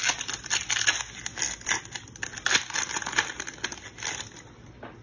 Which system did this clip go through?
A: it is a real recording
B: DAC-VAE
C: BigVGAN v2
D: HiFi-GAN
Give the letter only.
A